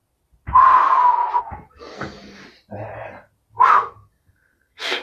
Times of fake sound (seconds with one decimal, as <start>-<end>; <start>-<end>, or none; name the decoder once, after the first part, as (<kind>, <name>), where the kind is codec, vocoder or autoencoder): 1.4-2.4 (codec, SNAC); 3.7-5.0